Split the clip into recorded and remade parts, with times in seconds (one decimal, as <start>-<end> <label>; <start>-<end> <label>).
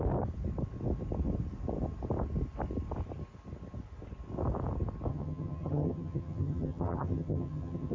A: 0.0-5.1 recorded; 5.1-7.9 remade